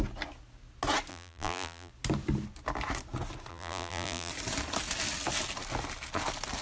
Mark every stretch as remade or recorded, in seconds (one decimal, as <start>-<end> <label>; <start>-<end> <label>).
0.0-1.1 recorded; 1.1-1.9 remade; 1.9-3.5 recorded; 3.5-4.3 remade; 4.3-6.6 recorded